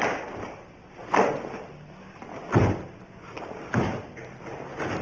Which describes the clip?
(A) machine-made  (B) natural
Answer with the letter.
B